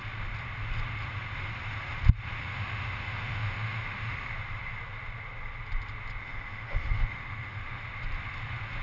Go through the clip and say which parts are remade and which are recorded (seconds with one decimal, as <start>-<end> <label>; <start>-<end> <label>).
0.0-2.4 recorded; 2.4-4.3 remade; 4.3-6.2 recorded; 6.2-7.8 remade; 7.8-8.8 recorded